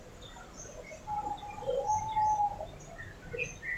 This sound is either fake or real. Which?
real